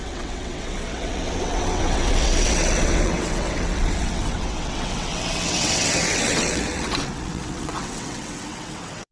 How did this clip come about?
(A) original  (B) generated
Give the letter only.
B